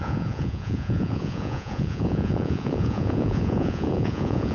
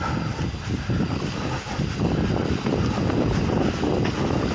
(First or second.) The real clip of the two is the second